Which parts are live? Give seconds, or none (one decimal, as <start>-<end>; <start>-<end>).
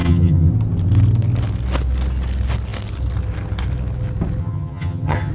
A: 0.5-4.4